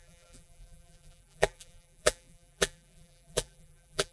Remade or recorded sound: remade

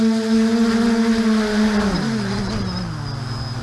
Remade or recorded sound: recorded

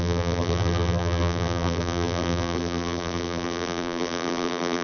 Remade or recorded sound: remade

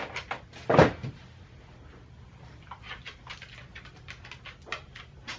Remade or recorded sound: recorded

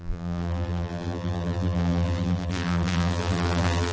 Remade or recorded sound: remade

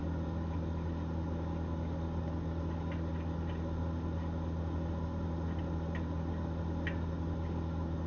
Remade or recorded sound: recorded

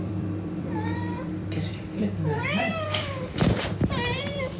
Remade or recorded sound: remade